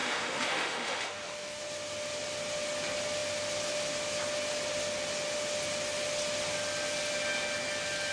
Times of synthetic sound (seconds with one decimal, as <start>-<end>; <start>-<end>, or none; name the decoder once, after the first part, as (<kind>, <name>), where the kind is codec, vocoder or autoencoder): 0.0-1.6 (autoencoder, DAC-VAE)